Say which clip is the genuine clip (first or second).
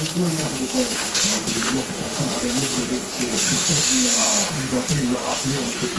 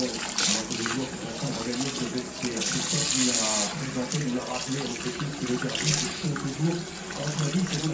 second